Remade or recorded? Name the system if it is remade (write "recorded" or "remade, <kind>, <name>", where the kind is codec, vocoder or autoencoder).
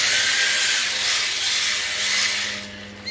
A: recorded